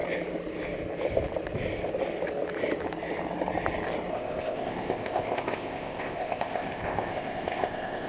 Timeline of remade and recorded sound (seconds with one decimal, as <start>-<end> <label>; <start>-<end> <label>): 0.0-4.1 recorded; 4.1-8.1 remade